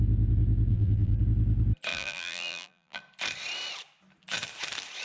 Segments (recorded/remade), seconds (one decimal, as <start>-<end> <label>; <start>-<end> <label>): 0.0-0.7 recorded; 0.7-1.2 remade; 1.2-1.9 recorded; 1.9-3.0 remade; 3.0-5.0 recorded